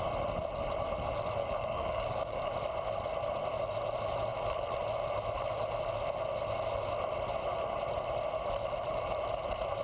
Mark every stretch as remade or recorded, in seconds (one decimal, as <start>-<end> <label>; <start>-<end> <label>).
0.0-1.4 recorded; 1.4-2.5 remade; 2.5-9.8 recorded